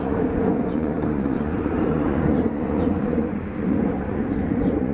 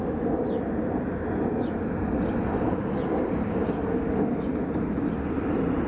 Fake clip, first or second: first